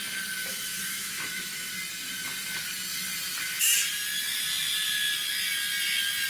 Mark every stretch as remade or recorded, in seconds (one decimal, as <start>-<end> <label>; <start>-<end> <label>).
0.0-0.4 recorded; 0.4-1.7 remade; 1.7-6.3 recorded